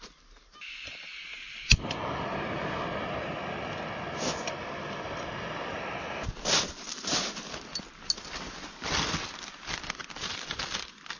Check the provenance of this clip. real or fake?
real